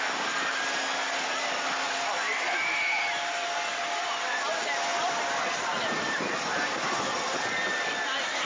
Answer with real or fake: real